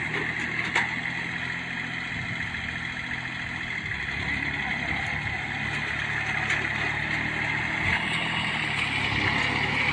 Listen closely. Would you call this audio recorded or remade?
recorded